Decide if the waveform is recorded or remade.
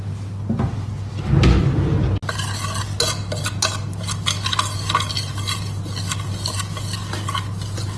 recorded